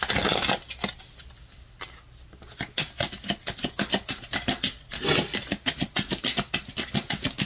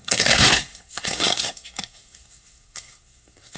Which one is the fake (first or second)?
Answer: second